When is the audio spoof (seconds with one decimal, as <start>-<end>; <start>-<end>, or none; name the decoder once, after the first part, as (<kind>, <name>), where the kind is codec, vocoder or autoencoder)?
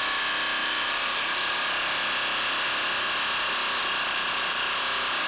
0.6-1.5 (vocoder, BigVGAN v2); 3.8-4.8